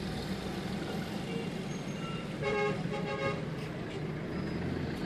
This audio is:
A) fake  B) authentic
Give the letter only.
B